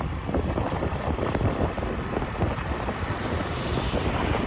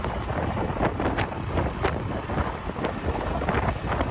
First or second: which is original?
second